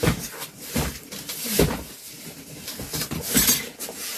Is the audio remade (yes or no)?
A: yes